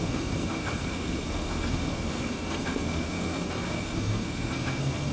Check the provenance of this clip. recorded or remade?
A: remade